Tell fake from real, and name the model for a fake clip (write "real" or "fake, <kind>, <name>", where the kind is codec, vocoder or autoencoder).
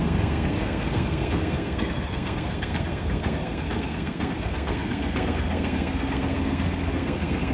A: fake, codec, SNAC